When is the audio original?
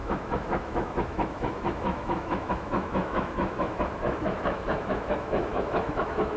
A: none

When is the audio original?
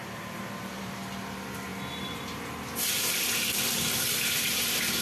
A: 1.0-5.0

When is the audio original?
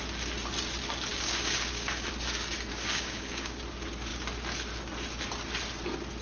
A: 0.0-1.1; 2.1-2.7; 3.6-6.2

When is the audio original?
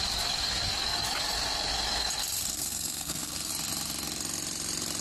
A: 0.0-2.5; 3.5-5.0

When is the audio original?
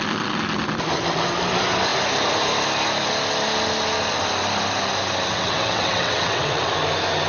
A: 0.0-5.3; 6.7-7.3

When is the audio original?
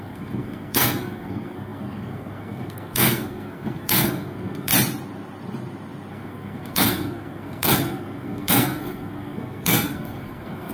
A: 4.7-6.1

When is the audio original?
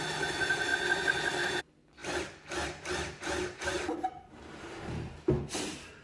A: 0.0-6.0